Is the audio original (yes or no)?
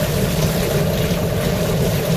yes